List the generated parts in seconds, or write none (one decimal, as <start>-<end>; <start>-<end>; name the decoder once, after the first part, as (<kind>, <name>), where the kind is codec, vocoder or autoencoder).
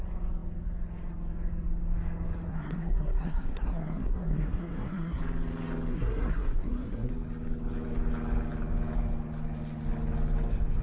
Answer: 2.5-5.2 (codec, SNAC); 5.9-7.1